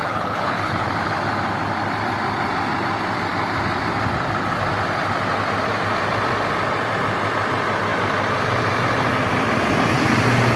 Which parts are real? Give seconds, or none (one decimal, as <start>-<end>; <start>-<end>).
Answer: 0.9-10.6